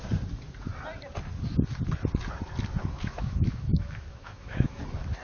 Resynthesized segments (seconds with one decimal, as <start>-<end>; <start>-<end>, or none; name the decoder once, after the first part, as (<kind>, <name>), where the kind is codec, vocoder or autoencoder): 2.8-4.8 (autoencoder, DAC-VAE)

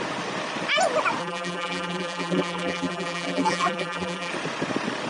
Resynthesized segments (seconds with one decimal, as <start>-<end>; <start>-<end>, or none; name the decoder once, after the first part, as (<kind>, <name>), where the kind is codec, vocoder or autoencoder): 1.2-4.3 (vocoder, BigVGAN v2)

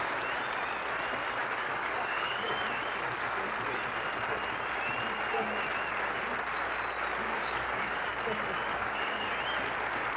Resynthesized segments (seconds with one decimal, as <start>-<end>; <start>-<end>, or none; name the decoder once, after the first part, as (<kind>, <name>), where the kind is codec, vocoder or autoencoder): 1.4-2.5 (codec, DAC); 7.3-8.1; 8.7-9.3

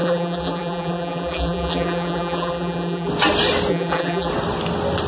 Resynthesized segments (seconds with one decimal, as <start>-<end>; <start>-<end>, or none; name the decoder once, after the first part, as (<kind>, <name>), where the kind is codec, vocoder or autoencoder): 0.0-3.1 (vocoder, BigVGAN v2); 3.7-4.3

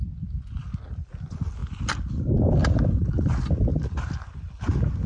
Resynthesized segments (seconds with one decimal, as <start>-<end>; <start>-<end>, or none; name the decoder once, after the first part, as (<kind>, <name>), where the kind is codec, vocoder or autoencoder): none

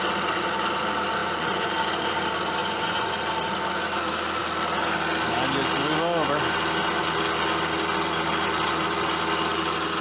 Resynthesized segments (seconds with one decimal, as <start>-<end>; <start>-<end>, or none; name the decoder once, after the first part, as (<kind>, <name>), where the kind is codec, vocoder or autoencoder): 1.2-1.7 (vocoder, Vocos); 2.6-3.1